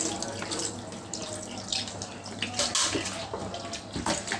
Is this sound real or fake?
real